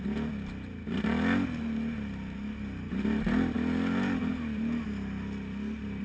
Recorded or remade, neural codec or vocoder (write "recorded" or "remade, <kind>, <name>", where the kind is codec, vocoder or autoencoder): recorded